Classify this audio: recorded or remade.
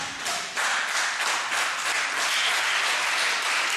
recorded